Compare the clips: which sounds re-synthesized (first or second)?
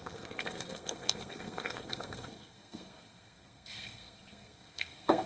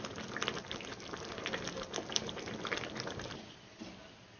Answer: first